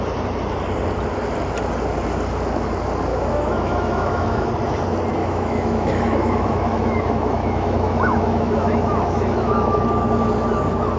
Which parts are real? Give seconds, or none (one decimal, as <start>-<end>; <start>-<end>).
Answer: 0.0-3.1; 4.5-5.2; 9.8-11.0